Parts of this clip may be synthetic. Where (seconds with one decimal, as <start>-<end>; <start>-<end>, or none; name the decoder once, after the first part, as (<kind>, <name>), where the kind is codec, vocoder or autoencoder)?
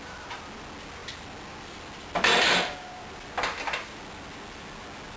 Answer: none